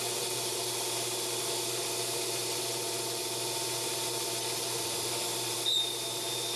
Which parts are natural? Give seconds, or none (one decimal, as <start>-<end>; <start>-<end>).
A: 0.0-6.6